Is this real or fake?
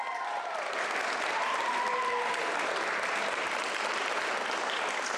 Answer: real